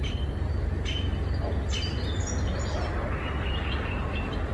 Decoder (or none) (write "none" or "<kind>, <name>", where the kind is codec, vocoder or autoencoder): none